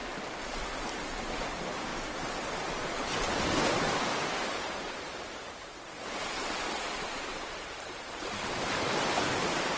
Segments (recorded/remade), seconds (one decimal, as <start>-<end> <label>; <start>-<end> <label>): 0.0-1.2 recorded; 1.2-1.9 remade; 1.9-3.7 recorded; 3.7-9.8 remade